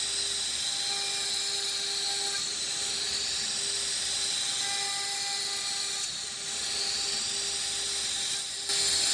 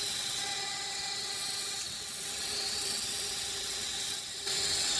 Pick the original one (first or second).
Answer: first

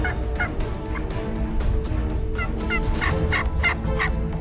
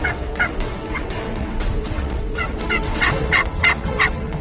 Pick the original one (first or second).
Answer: first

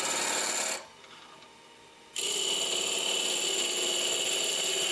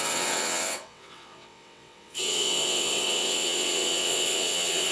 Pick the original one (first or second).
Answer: first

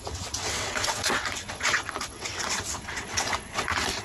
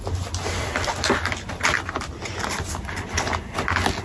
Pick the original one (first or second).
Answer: second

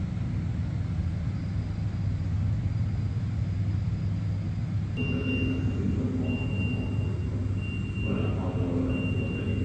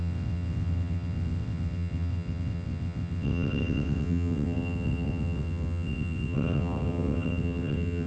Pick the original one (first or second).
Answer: first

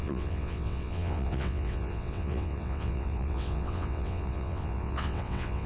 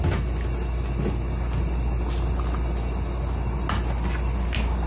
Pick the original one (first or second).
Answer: second